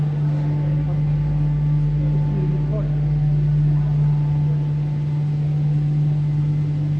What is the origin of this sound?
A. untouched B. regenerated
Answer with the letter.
A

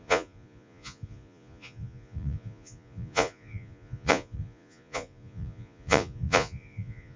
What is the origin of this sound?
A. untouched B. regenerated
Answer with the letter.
B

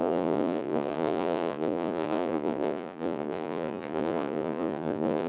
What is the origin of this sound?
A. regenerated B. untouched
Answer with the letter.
A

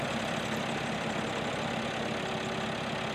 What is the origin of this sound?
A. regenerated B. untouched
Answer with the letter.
B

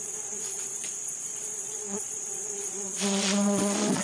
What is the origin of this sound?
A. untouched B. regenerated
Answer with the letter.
B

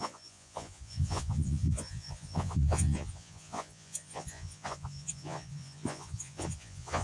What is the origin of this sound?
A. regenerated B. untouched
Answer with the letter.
A